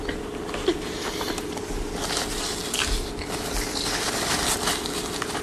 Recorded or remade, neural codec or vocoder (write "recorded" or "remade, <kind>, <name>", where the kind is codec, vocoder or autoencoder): recorded